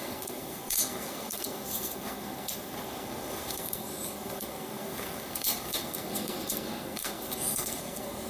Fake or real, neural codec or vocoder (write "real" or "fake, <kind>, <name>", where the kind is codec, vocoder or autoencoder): fake, codec, SNAC